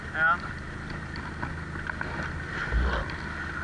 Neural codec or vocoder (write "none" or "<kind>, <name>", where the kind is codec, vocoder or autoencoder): none